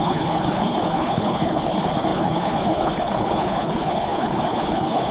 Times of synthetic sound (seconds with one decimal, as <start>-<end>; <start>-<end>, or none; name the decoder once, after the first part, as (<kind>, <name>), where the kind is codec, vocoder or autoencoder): 0.0-5.1 (codec, HILCodec)